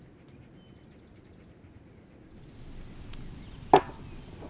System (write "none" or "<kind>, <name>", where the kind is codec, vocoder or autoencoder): none